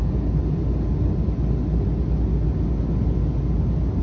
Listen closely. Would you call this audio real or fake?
real